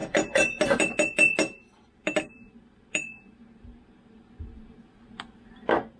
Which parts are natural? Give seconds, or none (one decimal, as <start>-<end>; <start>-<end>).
0.0-6.0